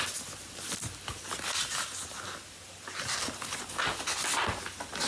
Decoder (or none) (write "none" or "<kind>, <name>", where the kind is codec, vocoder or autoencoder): none